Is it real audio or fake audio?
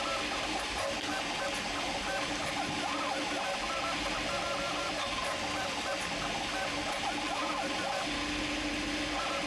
real